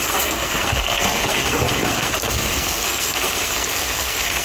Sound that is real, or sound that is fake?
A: fake